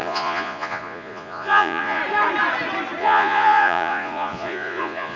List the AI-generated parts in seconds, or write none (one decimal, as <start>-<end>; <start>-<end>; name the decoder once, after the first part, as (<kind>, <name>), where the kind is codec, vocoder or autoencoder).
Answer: 0.0-2.0 (vocoder, Vocos); 3.0-5.2